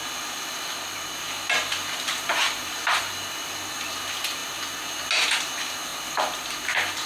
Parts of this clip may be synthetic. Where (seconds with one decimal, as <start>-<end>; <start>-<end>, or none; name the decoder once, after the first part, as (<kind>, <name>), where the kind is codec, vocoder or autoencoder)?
none